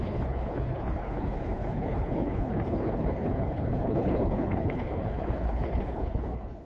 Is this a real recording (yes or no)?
no